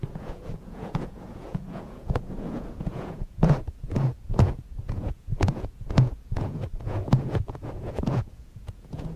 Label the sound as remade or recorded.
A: remade